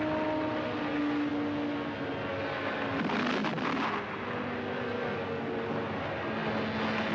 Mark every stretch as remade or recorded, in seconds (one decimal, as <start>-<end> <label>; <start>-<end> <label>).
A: 0.0-7.1 recorded